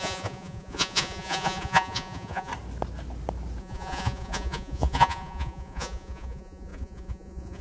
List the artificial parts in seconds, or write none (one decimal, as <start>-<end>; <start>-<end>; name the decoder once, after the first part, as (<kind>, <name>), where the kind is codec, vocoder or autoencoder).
0.0-2.5 (vocoder, Vocos); 3.6-7.6